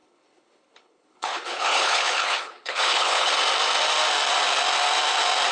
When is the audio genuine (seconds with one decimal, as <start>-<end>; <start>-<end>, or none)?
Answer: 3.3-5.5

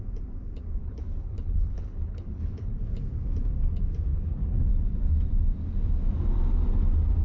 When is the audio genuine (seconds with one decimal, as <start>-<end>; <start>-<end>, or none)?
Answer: 0.0-0.8; 2.8-4.1; 4.7-7.2

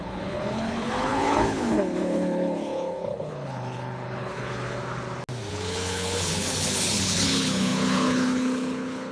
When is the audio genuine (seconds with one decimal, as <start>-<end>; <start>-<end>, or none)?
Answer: 4.8-5.5